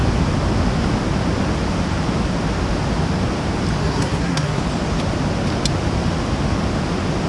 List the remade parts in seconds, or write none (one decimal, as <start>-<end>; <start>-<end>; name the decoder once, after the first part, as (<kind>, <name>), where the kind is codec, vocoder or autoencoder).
3.8-4.6 (codec, SNAC)